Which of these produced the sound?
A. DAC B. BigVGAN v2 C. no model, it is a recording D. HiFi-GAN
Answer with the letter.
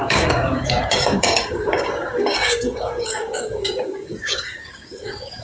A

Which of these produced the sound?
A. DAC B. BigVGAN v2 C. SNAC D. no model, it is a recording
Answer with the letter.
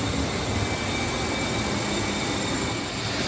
D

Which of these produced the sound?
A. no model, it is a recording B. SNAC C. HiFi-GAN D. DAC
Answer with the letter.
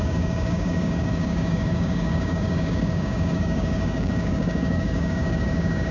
D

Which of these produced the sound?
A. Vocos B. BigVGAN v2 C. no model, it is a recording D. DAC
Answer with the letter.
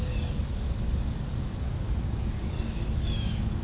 D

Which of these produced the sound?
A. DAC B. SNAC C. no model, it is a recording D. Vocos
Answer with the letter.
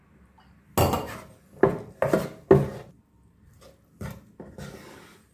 C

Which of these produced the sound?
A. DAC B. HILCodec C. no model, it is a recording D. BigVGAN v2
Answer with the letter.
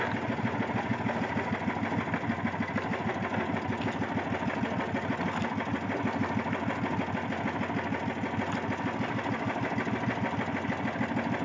C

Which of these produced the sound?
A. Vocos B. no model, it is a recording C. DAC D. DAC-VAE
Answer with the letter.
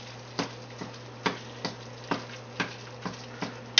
B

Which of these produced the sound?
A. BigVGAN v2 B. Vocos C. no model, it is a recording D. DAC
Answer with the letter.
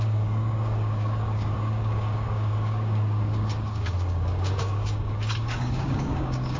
D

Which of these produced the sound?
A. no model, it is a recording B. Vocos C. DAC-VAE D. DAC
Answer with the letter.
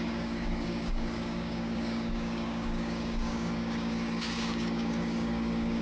D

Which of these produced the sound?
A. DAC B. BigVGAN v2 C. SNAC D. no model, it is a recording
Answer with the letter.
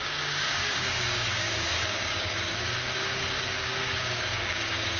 A